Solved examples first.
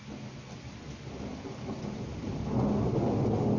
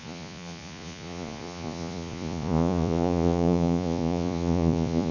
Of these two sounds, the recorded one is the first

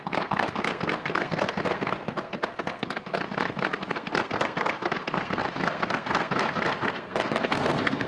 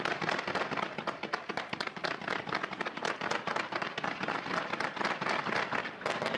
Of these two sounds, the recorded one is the second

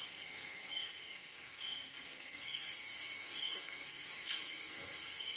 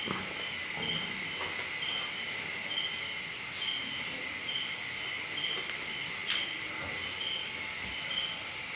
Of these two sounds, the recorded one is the second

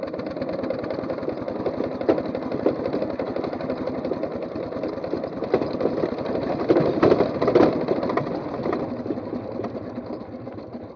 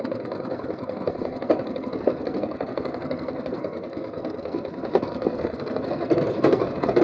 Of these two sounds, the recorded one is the first